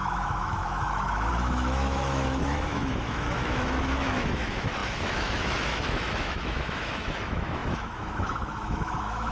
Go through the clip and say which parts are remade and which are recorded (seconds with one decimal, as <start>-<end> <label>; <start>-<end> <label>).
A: 0.0-9.3 remade